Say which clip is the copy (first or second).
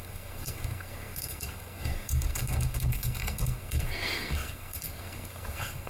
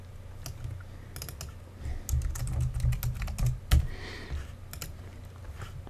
first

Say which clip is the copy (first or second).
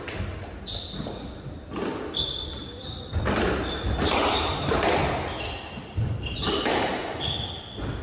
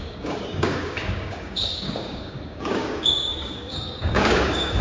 second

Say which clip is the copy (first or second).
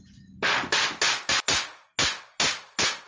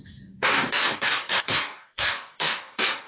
second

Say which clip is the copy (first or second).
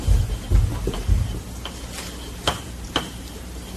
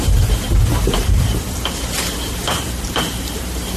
second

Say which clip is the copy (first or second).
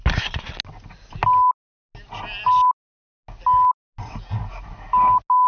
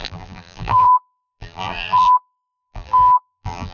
second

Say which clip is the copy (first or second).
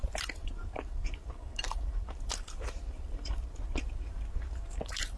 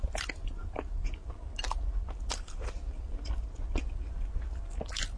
first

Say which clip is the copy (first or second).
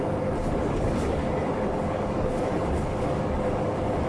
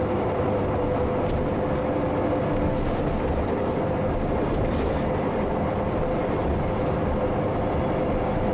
first